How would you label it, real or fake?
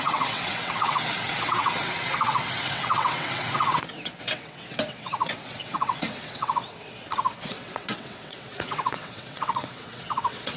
fake